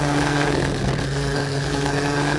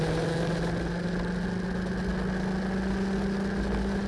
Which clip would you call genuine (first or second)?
second